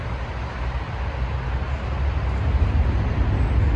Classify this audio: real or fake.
real